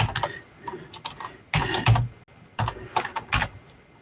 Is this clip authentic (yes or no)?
yes